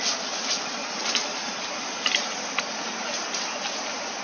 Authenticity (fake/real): real